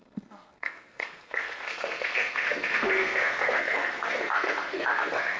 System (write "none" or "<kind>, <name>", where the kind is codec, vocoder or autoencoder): codec, SNAC